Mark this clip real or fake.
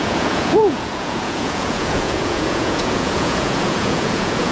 fake